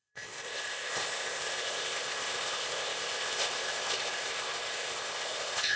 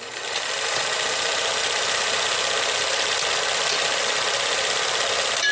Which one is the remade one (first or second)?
first